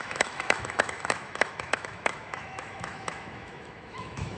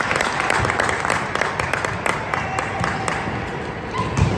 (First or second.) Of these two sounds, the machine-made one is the first